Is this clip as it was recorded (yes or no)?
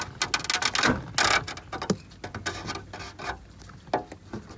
yes